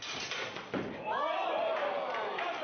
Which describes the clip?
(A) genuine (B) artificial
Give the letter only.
A